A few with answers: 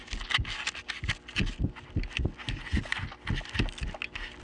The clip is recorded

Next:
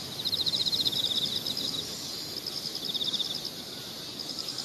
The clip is recorded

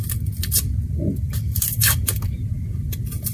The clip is remade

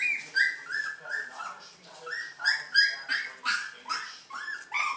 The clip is recorded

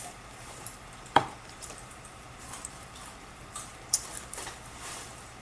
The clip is remade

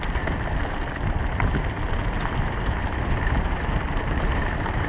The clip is recorded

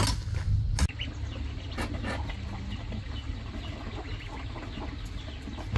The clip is recorded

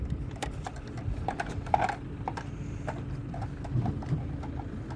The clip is recorded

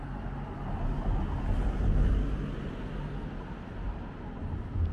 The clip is recorded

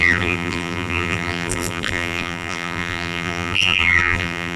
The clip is remade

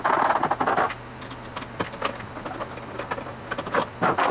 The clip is recorded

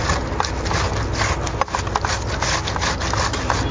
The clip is recorded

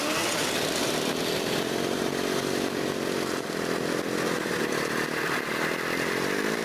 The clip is remade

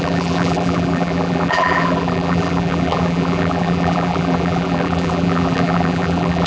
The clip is remade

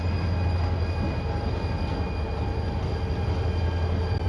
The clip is recorded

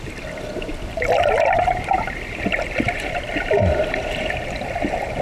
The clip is remade